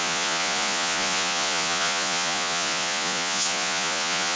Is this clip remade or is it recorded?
remade